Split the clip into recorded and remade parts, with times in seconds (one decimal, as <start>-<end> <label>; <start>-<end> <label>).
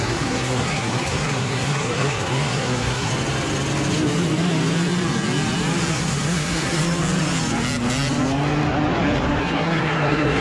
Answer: 0.0-3.1 remade; 3.1-5.9 recorded; 5.9-6.8 remade; 6.8-9.4 recorded; 9.4-10.4 remade